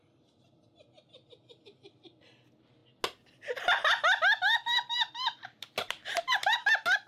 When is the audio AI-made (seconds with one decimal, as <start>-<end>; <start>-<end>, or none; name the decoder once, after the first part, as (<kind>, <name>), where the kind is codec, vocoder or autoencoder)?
none